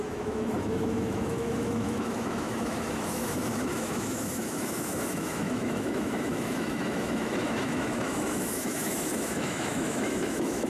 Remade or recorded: remade